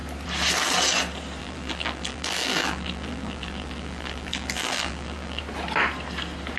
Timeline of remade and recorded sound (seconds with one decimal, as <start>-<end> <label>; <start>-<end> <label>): 0.0-1.4 recorded; 1.4-5.4 remade; 5.4-6.6 recorded